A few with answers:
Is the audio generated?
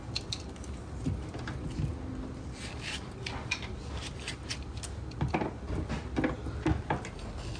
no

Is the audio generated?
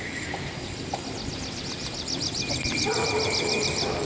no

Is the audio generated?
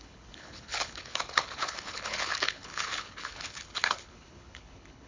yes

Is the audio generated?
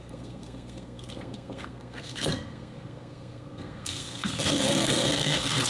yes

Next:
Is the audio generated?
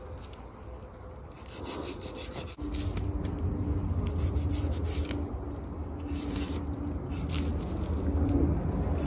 no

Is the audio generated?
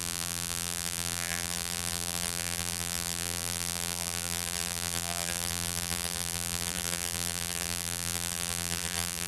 yes